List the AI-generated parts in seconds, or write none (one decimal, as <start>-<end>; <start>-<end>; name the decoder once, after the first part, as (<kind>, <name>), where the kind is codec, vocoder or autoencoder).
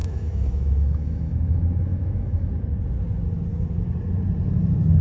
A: 0.0-2.5 (autoencoder, DAC-VAE)